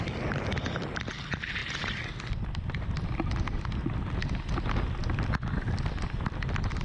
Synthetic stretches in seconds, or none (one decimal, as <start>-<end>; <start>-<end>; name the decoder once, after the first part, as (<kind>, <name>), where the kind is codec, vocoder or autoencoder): none